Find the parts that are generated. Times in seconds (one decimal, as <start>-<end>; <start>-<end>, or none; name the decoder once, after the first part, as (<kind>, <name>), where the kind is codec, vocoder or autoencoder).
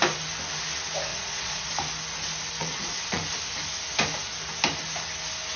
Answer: 1.1-1.7 (vocoder, Vocos); 2.6-3.2